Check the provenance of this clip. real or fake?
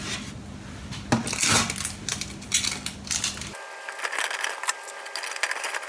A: real